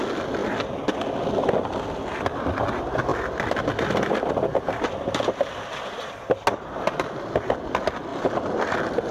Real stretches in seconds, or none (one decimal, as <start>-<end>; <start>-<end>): 0.0-3.1; 5.6-8.1

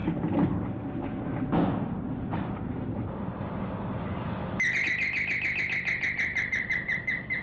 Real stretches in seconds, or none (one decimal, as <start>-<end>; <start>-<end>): 1.0-2.3; 3.1-6.3; 7.0-7.4

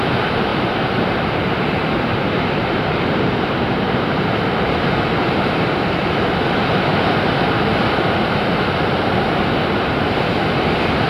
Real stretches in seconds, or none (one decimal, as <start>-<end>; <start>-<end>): 0.0-0.5; 5.6-11.1

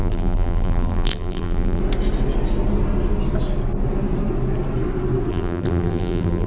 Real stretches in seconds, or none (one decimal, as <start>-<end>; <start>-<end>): 1.8-5.3

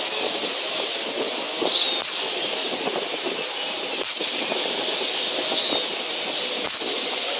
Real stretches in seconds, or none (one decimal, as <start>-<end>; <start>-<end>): 0.0-2.6; 4.8-7.4

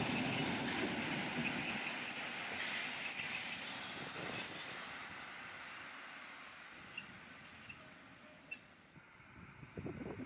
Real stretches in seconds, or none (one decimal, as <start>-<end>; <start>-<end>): 0.4-5.4

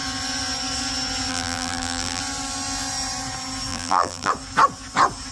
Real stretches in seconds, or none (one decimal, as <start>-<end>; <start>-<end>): 0.0-1.3; 2.2-3.7; 4.3-5.3

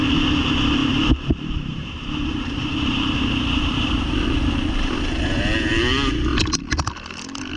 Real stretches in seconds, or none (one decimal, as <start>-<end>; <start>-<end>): 0.0-0.8; 5.4-7.6